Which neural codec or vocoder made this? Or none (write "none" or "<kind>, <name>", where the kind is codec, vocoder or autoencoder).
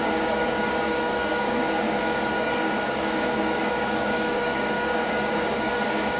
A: codec, DAC